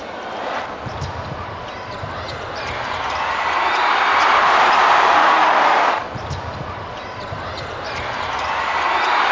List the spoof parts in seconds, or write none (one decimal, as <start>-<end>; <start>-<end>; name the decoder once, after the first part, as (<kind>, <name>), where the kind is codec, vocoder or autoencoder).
5.2-6.1 (codec, DAC)